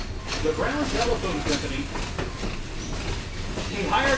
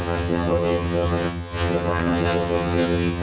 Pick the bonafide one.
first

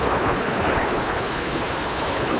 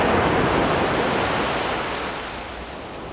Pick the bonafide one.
second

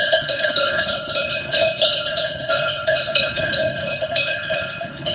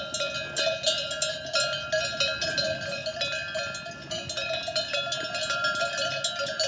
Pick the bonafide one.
second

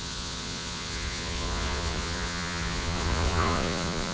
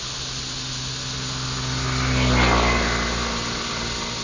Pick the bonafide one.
second